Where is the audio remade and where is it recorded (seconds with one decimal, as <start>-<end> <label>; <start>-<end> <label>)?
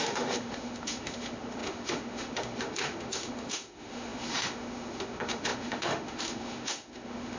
0.0-7.4 remade